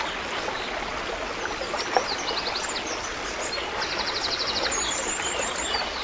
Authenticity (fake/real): real